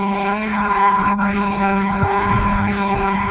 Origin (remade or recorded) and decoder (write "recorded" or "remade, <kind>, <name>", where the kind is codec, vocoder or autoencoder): remade, codec, HILCodec